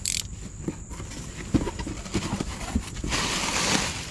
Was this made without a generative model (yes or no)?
yes